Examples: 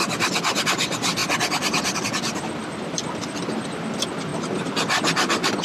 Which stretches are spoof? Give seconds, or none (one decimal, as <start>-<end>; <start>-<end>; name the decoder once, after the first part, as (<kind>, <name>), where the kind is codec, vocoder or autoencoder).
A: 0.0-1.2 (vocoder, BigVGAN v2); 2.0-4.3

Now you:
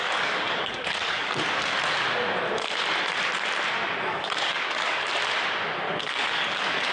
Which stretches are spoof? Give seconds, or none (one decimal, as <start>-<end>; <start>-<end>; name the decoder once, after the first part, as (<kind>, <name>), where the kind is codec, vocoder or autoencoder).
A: 0.0-1.7 (codec, DAC); 4.1-5.1; 6.0-6.9

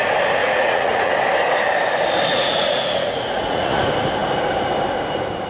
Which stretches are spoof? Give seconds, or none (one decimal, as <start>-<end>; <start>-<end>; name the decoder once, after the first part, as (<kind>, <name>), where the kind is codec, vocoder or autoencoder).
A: 0.4-1.1 (vocoder, Vocos); 2.3-3.8